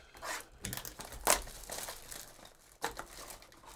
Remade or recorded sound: recorded